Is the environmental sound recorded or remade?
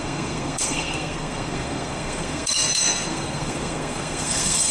remade